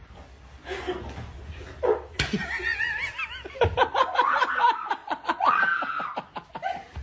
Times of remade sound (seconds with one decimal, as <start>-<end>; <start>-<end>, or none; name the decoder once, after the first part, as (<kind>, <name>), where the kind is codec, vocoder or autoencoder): 5.0-5.6 (vocoder, Vocos)